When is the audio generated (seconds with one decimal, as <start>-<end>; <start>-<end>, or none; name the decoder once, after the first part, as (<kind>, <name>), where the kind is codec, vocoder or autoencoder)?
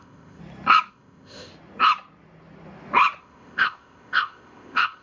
0.0-0.4 (codec, ZipCodec); 0.9-1.5; 3.2-5.0